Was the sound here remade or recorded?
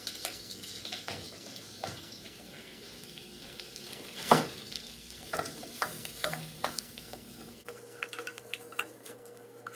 remade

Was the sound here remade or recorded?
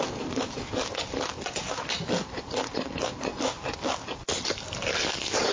recorded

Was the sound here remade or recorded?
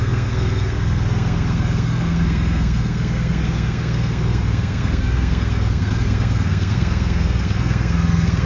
remade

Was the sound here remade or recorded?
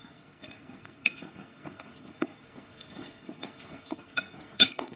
remade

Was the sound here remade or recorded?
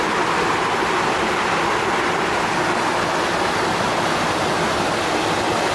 recorded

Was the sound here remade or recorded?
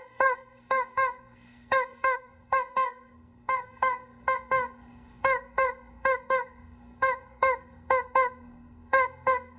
remade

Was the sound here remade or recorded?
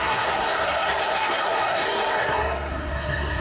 remade